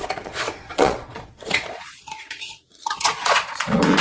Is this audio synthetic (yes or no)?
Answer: yes